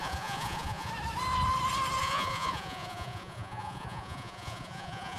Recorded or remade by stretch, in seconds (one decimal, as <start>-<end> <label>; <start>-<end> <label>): 0.0-0.9 remade; 0.9-2.0 recorded; 2.0-5.2 remade